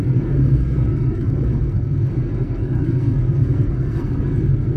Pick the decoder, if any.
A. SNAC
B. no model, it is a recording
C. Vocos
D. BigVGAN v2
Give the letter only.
A